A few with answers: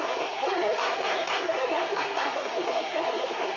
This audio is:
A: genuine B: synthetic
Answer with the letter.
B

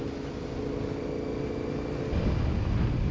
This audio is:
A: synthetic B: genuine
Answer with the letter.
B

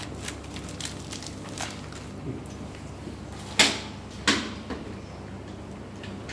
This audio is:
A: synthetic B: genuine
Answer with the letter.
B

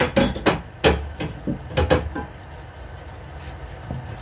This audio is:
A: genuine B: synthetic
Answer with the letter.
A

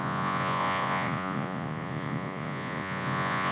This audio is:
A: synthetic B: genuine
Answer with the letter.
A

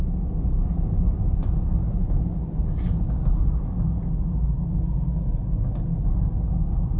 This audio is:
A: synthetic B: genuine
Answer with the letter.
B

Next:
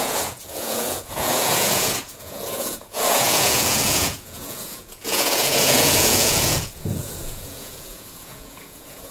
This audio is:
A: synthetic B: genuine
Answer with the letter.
A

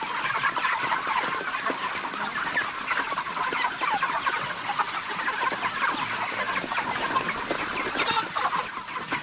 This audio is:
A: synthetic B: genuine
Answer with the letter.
B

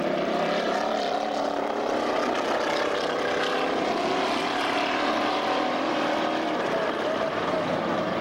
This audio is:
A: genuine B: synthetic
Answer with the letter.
B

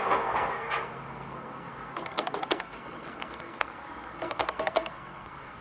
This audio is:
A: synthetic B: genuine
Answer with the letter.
A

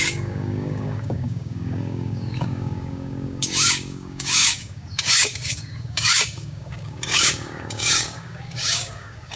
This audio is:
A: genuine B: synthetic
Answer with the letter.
B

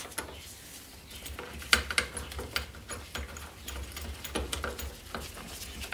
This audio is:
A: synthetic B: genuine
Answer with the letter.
B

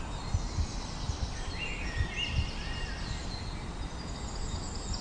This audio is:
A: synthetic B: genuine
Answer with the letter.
B